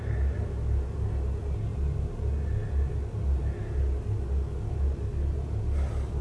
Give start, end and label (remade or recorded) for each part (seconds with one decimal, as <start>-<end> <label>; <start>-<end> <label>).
0.0-6.2 recorded